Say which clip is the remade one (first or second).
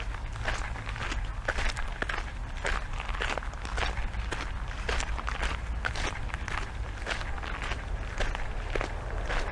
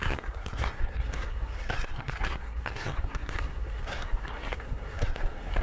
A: second